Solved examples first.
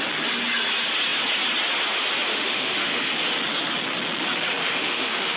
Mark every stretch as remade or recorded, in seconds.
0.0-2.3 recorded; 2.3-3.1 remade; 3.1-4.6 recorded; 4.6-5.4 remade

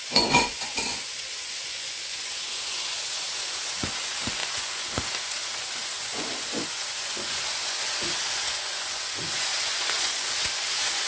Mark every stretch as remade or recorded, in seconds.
0.0-11.1 remade

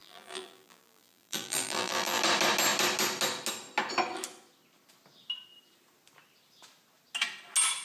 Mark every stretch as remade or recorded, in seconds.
0.0-2.2 remade; 2.2-7.8 recorded